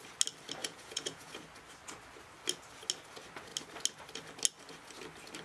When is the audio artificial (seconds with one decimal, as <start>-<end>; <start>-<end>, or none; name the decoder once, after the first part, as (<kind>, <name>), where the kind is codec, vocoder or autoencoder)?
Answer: 0.6-1.4 (vocoder, Vocos)